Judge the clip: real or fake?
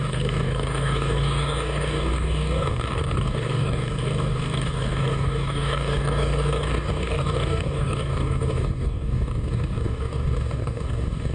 fake